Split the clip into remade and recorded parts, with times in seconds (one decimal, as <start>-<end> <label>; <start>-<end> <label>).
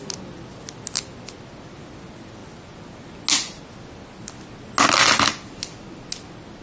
0.0-6.6 recorded